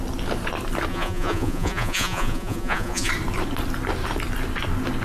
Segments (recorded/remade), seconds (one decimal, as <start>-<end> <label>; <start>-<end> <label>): 0.0-0.9 recorded; 0.9-3.1 remade; 3.1-5.0 recorded